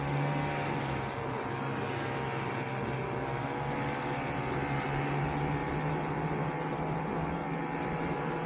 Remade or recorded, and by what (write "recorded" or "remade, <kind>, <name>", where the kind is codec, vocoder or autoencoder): recorded